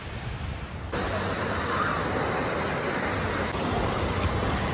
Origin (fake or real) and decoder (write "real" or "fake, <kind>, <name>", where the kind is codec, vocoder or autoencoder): real